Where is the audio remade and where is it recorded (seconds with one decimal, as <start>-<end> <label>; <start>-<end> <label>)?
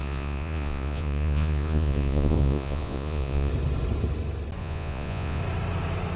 0.0-3.5 remade; 3.5-4.6 recorded; 4.6-5.4 remade; 5.4-6.2 recorded